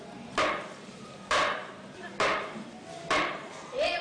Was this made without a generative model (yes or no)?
no